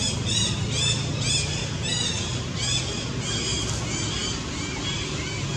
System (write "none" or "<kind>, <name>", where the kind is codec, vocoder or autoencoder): none